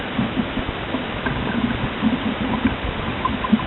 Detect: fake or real real